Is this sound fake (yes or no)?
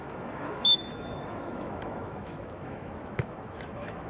yes